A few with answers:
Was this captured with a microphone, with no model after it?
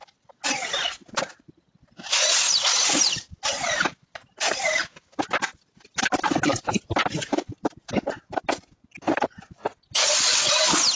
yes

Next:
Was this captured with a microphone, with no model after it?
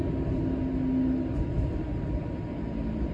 yes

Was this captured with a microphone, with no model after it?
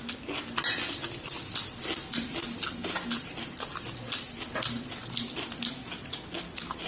yes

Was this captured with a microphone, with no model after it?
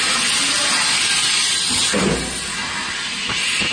yes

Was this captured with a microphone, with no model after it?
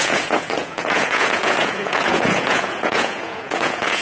no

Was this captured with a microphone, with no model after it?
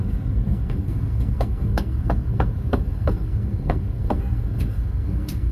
no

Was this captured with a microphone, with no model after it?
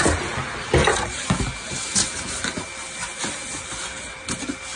yes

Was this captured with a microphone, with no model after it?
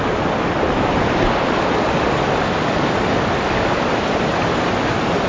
yes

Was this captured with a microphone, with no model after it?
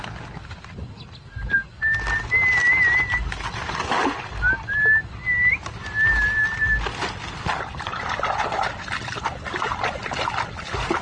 yes